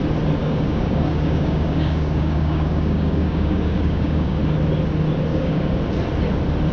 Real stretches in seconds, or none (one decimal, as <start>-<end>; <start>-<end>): 0.0-0.4; 4.4-5.3; 5.8-6.7